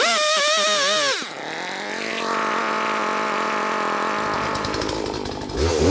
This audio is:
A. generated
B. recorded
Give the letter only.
B